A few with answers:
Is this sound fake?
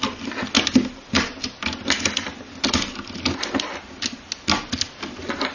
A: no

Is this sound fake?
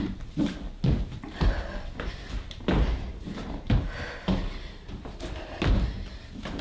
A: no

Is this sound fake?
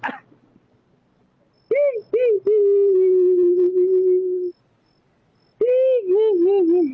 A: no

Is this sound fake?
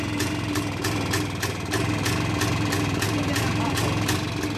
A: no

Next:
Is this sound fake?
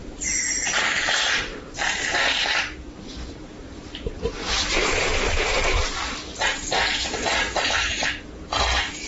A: yes